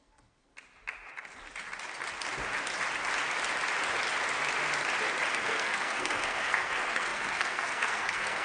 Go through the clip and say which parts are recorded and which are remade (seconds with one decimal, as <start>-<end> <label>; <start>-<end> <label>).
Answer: 0.0-0.5 remade; 0.5-5.3 recorded; 5.3-8.4 remade